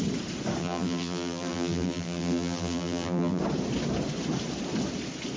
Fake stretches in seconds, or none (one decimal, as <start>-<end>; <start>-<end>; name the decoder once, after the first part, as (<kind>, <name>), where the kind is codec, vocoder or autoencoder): 0.6-3.4 (vocoder, BigVGAN v2)